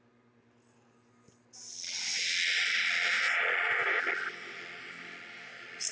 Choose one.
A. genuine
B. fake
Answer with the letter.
A